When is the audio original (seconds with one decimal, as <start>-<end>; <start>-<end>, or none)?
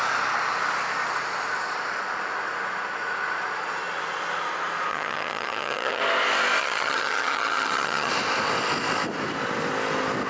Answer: 0.0-4.9; 6.0-6.6; 8.1-10.3